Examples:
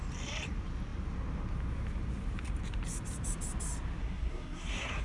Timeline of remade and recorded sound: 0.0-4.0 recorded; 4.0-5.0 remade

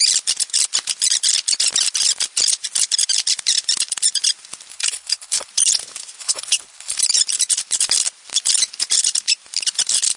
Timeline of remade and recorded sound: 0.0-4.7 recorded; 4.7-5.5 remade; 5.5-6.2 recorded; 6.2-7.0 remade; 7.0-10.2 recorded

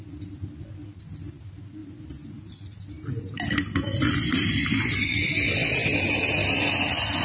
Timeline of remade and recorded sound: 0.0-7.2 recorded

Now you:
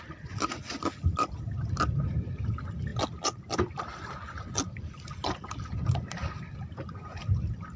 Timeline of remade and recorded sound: 0.0-7.8 recorded

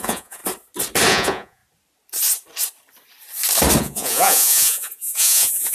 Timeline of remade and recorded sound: 0.0-0.4 remade; 0.4-1.1 recorded; 1.1-1.6 remade; 1.6-3.8 recorded; 3.8-5.7 remade

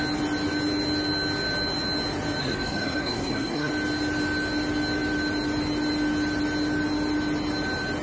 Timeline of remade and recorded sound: 0.0-2.4 recorded; 2.4-3.7 remade; 3.7-8.0 recorded

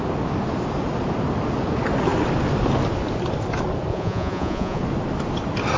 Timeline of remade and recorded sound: 0.0-3.9 recorded; 3.9-4.8 remade; 4.8-5.8 recorded

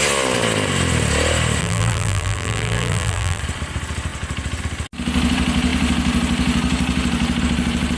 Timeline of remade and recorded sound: 0.0-1.6 recorded; 1.6-3.4 remade; 3.4-8.0 recorded